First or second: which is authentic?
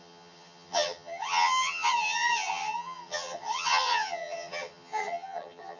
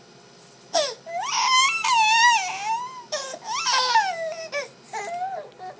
second